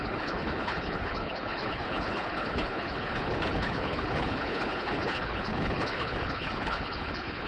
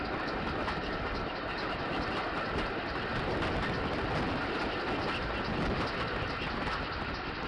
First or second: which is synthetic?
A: first